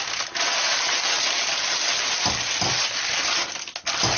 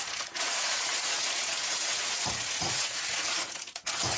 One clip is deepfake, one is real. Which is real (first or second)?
first